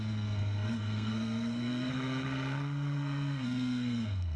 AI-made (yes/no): yes